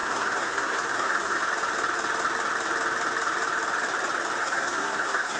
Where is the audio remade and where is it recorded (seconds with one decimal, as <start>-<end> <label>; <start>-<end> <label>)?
0.0-1.4 remade; 1.4-4.4 recorded; 4.4-5.4 remade